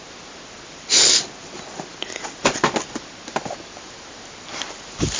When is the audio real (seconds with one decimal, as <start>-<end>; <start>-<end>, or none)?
0.0-5.2